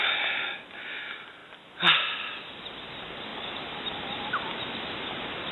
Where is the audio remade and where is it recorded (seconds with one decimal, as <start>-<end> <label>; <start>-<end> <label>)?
0.0-5.5 recorded